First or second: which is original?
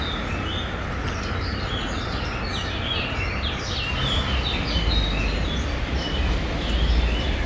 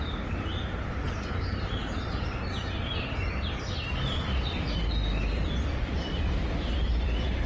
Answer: first